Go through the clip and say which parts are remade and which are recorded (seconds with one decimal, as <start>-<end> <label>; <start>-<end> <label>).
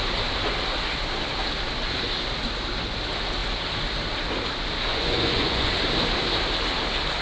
0.0-4.9 recorded; 4.9-5.7 remade; 5.7-7.2 recorded